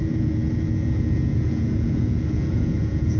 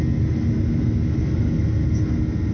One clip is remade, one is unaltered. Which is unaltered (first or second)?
second